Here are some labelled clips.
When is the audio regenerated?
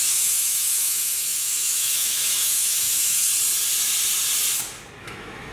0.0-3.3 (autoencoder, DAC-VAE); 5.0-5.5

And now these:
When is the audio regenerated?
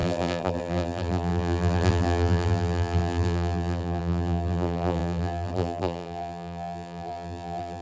0.0-7.8 (vocoder, BigVGAN v2)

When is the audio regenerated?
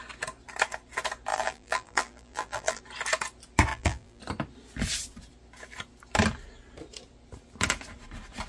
1.3-2.8 (vocoder, BigVGAN v2); 3.7-4.2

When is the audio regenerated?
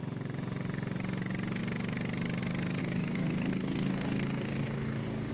2.8-5.3 (codec, DAC)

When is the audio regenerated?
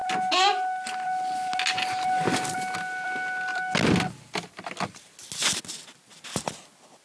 none